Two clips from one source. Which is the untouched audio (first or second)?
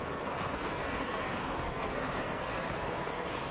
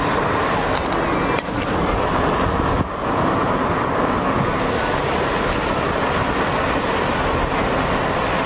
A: second